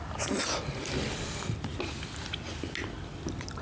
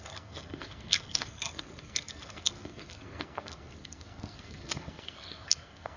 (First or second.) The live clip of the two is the first